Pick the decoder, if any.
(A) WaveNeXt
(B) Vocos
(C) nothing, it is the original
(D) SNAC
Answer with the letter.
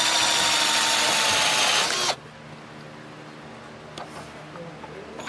C